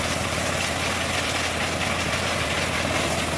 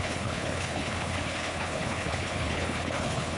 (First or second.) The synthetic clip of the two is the second